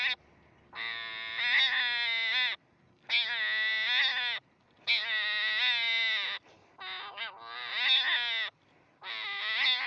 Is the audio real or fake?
real